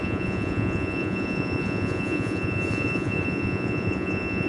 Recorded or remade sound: remade